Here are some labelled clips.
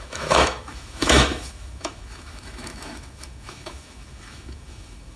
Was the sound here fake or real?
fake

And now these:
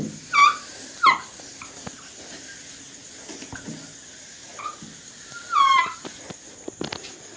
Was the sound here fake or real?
real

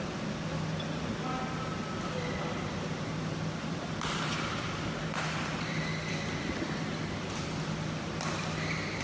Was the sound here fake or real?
real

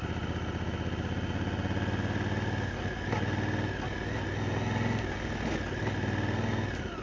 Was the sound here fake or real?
real